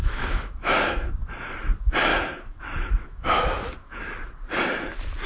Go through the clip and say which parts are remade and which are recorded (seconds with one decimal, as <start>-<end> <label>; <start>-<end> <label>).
0.0-1.1 remade; 1.1-2.1 recorded; 2.1-4.0 remade; 4.0-5.3 recorded